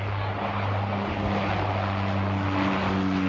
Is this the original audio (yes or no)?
yes